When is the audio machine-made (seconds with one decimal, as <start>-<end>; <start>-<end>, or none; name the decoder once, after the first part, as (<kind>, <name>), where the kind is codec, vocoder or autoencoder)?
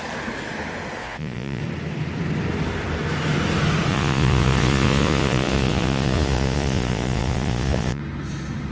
1.0-1.6 (vocoder, Vocos); 3.9-8.0